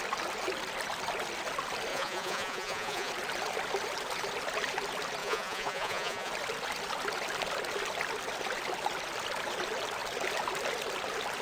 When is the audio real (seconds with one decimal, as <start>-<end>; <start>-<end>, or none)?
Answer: 0.0-1.9; 3.1-5.2; 6.3-11.4